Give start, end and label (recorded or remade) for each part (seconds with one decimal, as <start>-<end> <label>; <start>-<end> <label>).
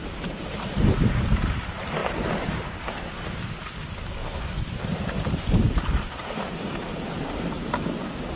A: 0.0-0.8 remade; 0.8-2.0 recorded; 2.0-2.8 remade; 2.8-4.2 recorded; 4.2-7.7 remade; 7.7-8.4 recorded